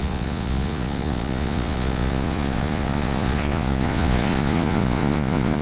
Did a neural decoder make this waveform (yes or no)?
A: yes